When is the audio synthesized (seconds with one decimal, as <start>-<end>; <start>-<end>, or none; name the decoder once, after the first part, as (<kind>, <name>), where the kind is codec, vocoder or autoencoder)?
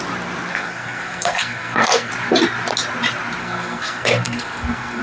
0.5-2.1 (codec, SNAC); 3.4-5.0